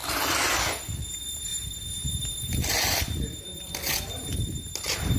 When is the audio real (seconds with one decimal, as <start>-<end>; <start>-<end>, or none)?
0.9-1.5; 4.6-5.2